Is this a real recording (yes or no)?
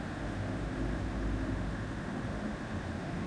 no